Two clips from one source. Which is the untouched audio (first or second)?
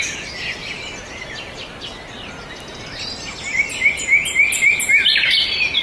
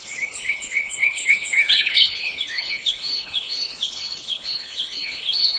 first